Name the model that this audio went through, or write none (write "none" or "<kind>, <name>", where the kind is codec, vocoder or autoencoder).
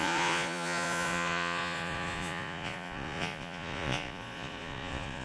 vocoder, Vocos